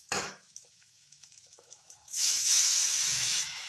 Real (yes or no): no